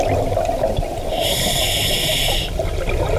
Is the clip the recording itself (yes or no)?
yes